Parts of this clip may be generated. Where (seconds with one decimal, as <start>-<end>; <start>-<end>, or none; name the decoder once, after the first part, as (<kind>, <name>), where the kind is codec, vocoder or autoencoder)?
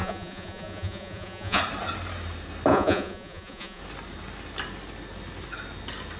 0.0-1.6 (vocoder, Vocos); 2.7-3.8